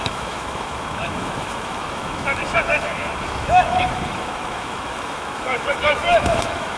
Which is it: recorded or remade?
remade